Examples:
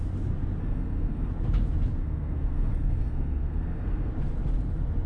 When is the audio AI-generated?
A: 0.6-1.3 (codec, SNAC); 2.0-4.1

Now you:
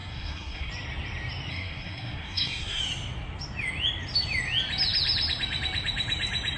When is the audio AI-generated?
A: 0.0-0.7 (codec, SNAC); 1.5-2.8

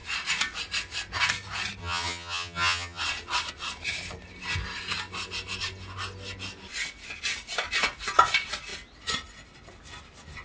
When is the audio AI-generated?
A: 1.8-3.0 (vocoder, HiFi-GAN)